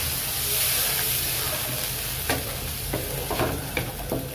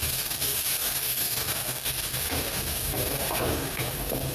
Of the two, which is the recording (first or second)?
first